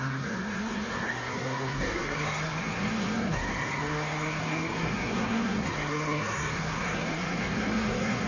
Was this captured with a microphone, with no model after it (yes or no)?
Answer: no